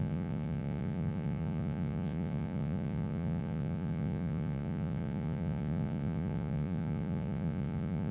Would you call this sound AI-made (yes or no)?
yes